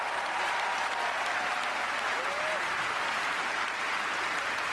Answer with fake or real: real